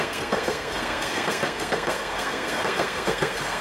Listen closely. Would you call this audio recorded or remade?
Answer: remade